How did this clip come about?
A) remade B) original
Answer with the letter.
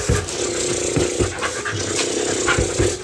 B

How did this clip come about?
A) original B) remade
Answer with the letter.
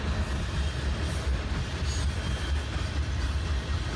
A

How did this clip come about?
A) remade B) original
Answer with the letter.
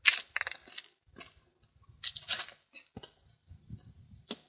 B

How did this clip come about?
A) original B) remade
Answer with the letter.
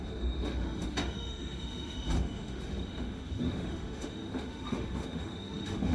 B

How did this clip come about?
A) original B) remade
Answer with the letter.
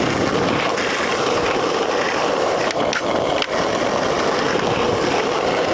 A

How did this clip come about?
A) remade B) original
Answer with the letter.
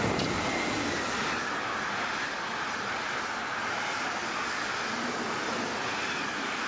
B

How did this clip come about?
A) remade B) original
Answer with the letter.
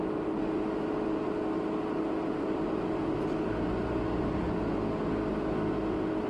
B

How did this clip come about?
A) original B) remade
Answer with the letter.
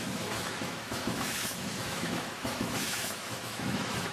B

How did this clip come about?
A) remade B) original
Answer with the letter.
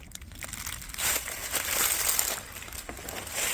B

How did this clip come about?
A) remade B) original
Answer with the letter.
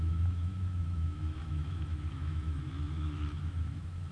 A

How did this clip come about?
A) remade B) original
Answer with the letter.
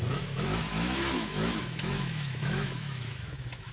A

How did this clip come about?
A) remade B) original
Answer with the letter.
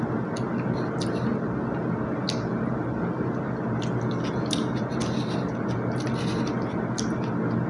B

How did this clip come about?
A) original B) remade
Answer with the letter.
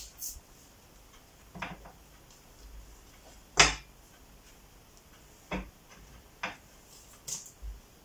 A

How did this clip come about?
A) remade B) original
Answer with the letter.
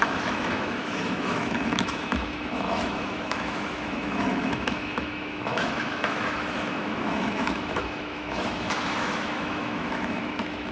A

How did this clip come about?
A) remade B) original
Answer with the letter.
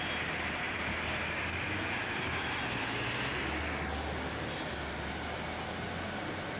B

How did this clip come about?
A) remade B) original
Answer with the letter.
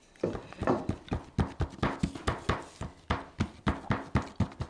B